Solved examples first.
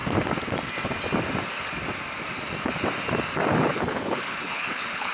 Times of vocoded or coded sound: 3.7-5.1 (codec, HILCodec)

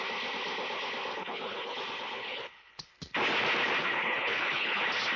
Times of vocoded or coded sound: 1.2-1.8 (codec, HILCodec); 2.2-2.9; 3.8-4.8